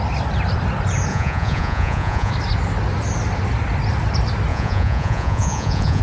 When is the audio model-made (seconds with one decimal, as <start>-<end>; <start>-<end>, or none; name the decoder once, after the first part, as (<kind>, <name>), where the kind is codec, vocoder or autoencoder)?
1.1-2.3 (vocoder, Vocos); 4.5-6.0

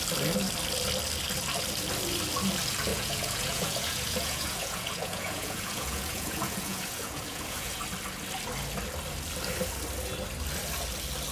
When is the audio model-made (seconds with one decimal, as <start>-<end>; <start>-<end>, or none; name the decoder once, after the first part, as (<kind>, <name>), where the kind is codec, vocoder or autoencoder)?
2.9-7.8 (vocoder, Vocos)